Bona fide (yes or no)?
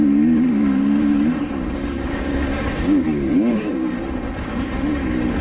no